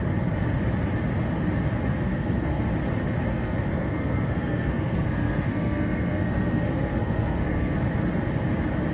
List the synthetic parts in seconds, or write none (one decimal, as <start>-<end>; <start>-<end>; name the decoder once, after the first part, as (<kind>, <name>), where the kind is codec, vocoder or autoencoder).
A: 1.9-2.7 (codec, SNAC); 3.3-7.8